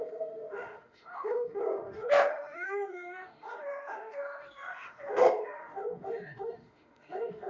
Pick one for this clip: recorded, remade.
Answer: remade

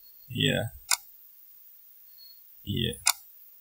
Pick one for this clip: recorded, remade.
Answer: remade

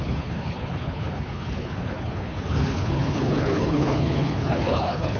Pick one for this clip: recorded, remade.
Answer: remade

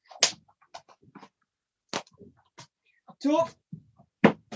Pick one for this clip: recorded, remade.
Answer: recorded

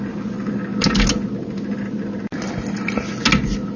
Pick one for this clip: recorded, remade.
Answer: recorded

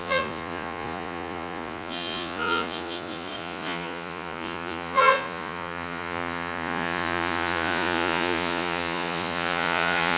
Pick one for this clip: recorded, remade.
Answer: remade